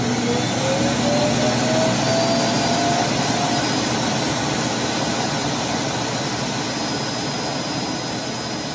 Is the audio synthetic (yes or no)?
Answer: no